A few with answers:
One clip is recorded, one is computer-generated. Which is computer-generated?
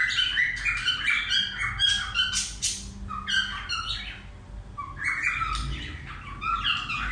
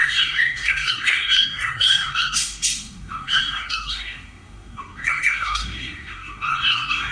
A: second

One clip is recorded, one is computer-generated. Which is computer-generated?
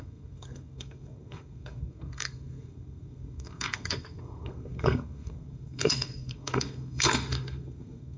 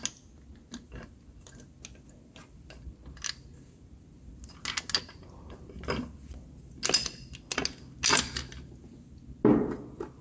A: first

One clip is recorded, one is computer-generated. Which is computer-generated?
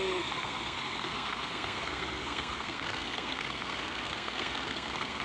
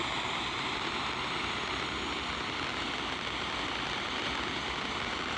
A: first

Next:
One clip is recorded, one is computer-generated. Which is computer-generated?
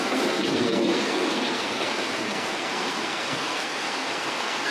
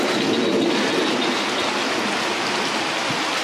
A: first